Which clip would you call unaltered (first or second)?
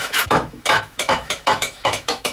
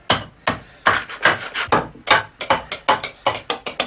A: second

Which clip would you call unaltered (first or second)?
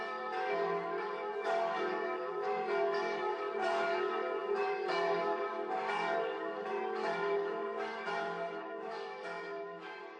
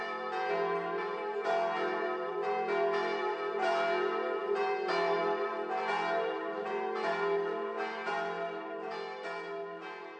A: second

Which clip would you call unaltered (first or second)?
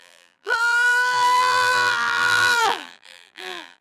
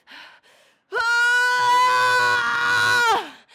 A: second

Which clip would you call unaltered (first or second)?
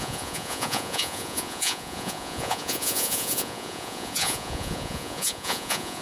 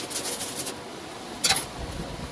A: second